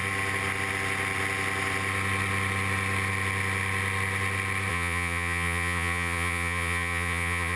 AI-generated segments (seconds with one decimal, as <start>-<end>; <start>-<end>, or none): 4.7-7.6